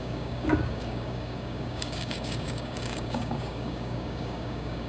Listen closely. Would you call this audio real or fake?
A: fake